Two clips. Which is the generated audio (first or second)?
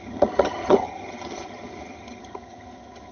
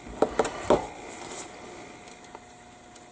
first